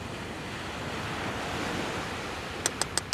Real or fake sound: real